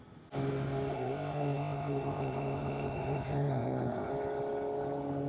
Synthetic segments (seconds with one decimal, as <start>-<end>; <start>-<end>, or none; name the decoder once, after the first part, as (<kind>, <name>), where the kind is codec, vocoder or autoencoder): 0.9-4.1 (codec, ZipCodec)